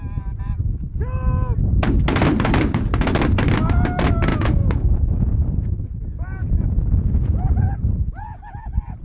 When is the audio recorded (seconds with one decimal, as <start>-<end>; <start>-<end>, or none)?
0.0-4.3; 5.9-6.4; 8.6-9.0